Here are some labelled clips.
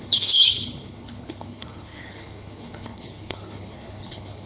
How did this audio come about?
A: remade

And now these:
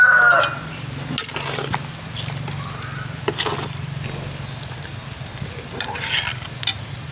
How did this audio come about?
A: recorded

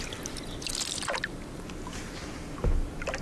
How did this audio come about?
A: recorded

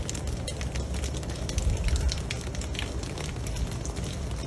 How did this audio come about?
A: recorded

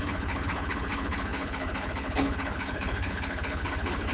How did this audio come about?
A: remade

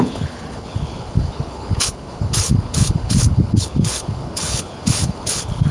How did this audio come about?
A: remade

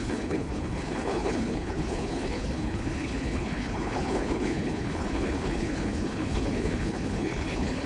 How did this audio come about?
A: remade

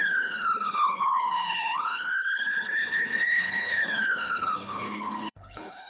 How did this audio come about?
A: remade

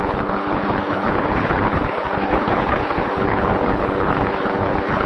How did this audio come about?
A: remade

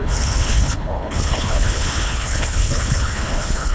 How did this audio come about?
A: remade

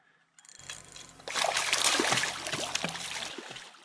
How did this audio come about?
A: recorded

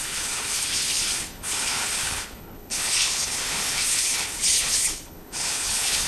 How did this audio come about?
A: remade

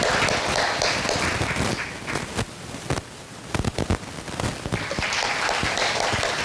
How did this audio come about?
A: recorded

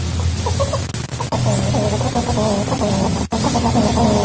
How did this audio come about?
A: recorded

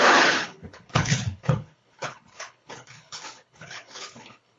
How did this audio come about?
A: remade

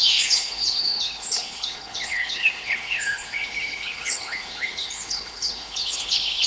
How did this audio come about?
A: remade